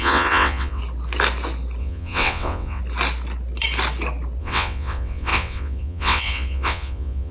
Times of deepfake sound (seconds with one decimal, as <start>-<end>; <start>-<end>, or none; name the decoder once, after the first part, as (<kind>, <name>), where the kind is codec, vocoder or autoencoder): 0.0-0.8 (vocoder, WaveNeXt); 1.8-2.8; 4.4-7.3

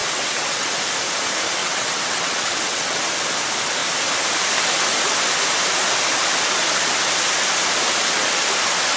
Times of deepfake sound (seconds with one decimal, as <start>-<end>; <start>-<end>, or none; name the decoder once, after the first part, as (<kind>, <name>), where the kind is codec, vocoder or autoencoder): 0.0-0.8 (vocoder, WaveNeXt); 1.6-3.0

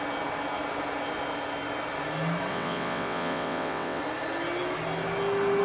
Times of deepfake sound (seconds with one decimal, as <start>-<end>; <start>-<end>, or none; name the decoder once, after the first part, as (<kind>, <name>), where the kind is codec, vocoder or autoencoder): 2.5-4.0 (vocoder, WaveNeXt)

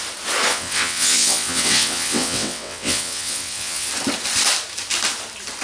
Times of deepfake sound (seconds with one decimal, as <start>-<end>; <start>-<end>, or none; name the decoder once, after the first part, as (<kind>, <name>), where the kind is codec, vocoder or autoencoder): 0.5-3.9 (vocoder, WaveNeXt)

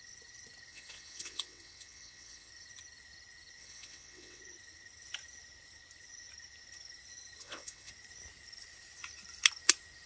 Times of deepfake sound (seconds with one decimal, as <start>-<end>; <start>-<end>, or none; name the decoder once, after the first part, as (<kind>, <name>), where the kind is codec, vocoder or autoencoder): 0.7-2.5 (vocoder, WaveNeXt); 3.6-4.4; 7.4-7.9

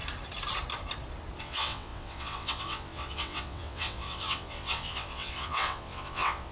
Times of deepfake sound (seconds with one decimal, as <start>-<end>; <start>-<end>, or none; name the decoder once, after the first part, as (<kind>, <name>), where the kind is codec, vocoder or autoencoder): 1.4-6.5 (vocoder, WaveNeXt)

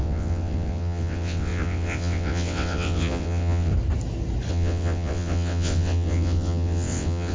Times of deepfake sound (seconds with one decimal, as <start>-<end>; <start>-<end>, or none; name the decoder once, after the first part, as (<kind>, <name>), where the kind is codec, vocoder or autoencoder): 0.0-3.7 (vocoder, WaveNeXt); 4.5-7.3